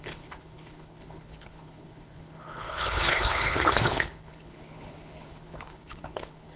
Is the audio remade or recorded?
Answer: remade